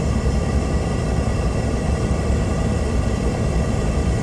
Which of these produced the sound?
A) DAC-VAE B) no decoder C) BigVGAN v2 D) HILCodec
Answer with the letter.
C